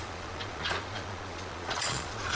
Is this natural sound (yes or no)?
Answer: no